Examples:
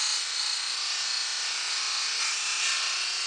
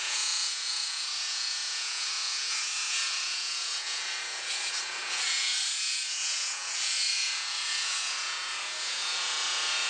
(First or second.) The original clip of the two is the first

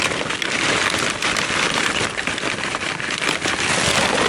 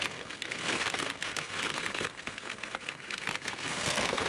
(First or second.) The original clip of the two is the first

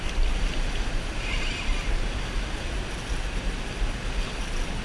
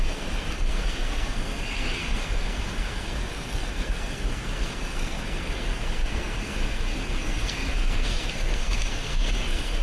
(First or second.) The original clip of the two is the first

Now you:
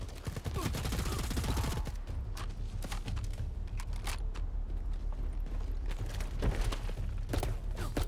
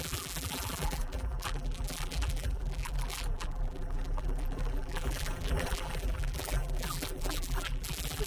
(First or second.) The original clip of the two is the first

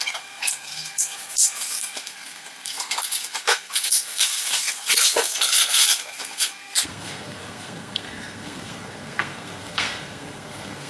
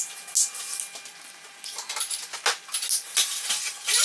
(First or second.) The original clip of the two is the second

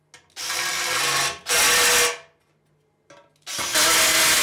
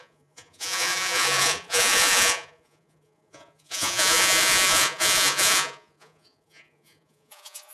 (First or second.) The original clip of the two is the first